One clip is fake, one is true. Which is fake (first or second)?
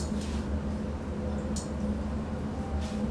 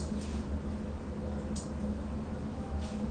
second